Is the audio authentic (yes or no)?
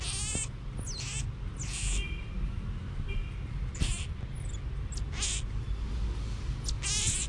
yes